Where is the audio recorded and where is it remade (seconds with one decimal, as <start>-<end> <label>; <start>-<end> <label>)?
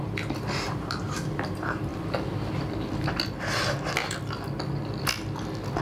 0.0-1.9 remade; 1.9-5.8 recorded